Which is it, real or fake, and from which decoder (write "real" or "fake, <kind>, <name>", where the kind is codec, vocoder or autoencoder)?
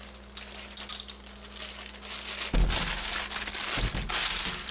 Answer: real